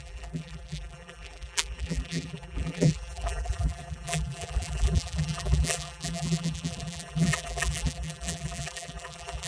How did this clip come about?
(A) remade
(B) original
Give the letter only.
A